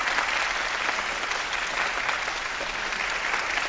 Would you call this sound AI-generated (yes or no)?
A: no